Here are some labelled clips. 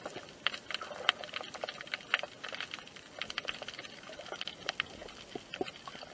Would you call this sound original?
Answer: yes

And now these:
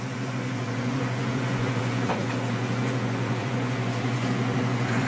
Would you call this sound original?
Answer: no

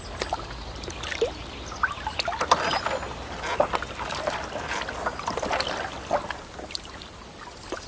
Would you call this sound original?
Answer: yes